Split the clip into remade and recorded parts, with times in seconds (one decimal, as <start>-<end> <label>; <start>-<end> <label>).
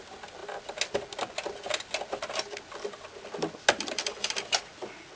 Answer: 0.0-5.2 recorded